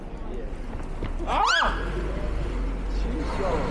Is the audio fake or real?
real